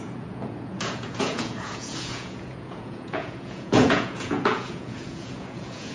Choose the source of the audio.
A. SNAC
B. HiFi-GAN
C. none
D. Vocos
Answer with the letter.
D